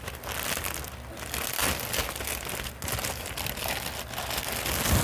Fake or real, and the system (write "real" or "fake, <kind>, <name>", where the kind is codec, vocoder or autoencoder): real